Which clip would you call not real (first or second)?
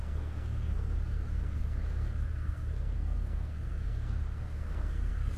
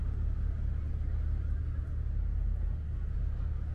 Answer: first